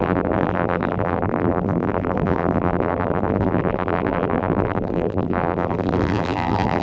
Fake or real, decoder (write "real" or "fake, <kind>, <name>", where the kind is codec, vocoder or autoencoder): fake, vocoder, BigVGAN v2